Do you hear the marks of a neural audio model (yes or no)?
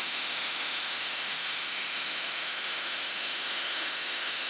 yes